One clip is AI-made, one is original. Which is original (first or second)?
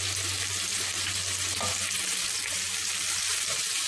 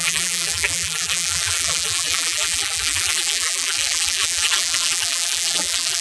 first